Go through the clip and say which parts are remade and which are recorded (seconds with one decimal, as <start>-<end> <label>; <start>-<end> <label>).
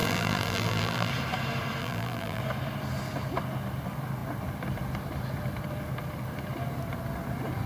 0.0-1.1 remade; 1.1-1.8 recorded; 1.8-2.4 remade; 2.4-7.7 recorded